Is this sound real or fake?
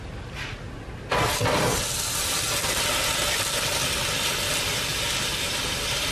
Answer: real